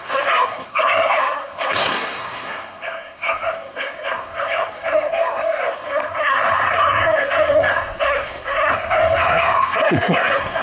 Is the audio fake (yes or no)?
yes